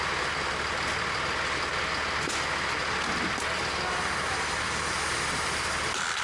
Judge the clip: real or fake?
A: real